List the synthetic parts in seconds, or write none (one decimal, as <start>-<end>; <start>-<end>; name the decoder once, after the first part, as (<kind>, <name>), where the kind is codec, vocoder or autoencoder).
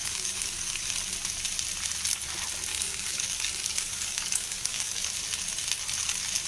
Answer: 0.0-0.9 (codec, DAC); 2.7-5.1